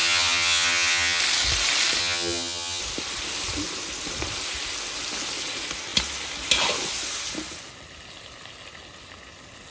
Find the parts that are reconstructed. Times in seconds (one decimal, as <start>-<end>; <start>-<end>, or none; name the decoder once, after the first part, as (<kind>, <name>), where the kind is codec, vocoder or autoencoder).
0.0-1.2 (vocoder, HiFi-GAN); 2.0-2.8